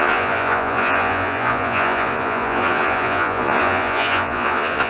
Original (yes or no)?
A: no